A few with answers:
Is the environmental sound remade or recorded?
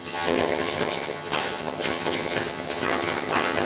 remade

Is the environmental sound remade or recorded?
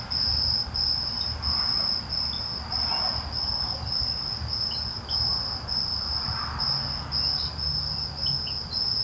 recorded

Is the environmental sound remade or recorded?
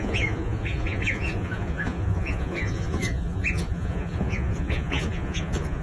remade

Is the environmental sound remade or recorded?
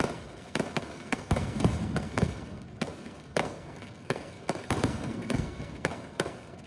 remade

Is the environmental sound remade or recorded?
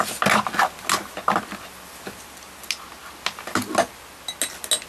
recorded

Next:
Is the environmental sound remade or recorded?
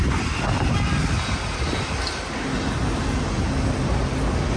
recorded